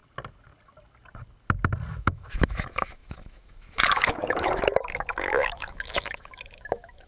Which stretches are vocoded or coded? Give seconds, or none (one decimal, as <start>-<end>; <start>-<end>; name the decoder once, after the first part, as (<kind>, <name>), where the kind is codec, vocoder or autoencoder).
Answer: 1.9-7.1 (autoencoder, DAC-VAE)